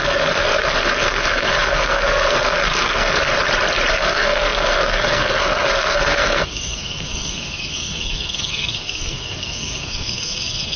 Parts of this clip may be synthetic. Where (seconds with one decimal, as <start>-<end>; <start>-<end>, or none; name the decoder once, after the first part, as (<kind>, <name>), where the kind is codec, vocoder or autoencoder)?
0.0-3.3 (codec, SNAC); 3.9-10.8